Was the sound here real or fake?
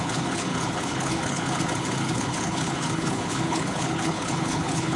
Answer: fake